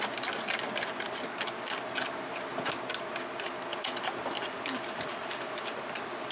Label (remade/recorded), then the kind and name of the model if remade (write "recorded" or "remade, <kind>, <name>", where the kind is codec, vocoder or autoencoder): recorded